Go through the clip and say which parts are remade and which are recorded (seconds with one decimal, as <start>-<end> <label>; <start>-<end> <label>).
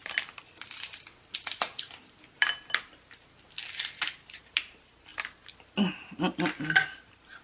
0.0-7.4 recorded